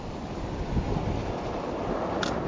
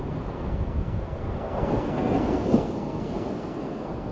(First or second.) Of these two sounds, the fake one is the second